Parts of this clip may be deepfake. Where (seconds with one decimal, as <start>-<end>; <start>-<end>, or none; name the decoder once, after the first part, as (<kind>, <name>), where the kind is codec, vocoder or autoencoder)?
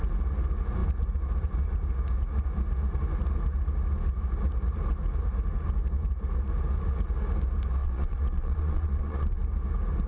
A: 7.8-9.4 (vocoder, Vocos)